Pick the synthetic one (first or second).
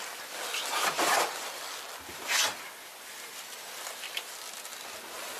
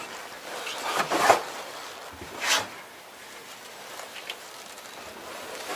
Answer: second